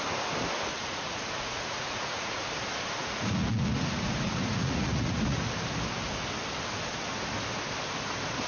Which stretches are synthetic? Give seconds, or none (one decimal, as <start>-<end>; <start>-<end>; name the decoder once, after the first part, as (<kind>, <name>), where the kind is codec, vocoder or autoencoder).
0.7-2.4 (vocoder, Vocos); 3.0-5.4